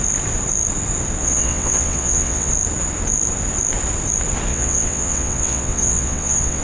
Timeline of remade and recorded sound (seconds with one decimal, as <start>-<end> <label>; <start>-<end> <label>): 0.0-1.2 recorded; 1.2-2.5 remade; 2.5-4.5 recorded; 4.5-6.6 remade

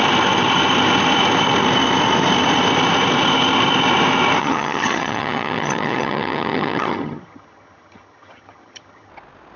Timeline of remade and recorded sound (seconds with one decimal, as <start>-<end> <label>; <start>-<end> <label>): 0.0-4.4 recorded; 4.4-9.1 remade; 9.1-9.6 recorded